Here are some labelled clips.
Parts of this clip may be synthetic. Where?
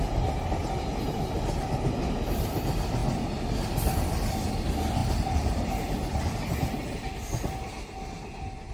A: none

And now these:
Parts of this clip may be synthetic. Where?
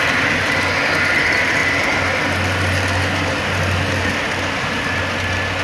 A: 1.6-2.3 (vocoder, BigVGAN v2)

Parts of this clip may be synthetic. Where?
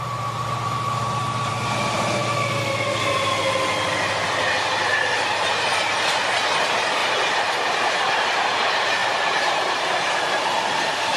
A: 0.0-2.2 (vocoder, BigVGAN v2); 6.6-11.2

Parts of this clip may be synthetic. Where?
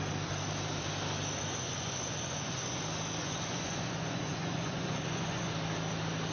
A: 1.5-2.8 (vocoder, Vocos); 3.2-5.5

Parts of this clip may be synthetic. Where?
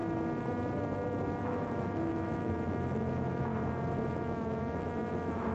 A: 1.4-3.5 (autoencoder, DAC-VAE); 4.1-5.5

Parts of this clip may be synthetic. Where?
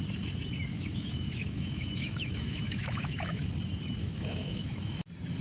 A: 0.7-3.5 (autoencoder, DAC-VAE); 4.0-5.0